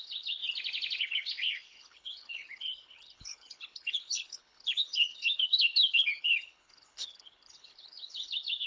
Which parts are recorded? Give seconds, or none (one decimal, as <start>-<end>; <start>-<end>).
0.4-1.0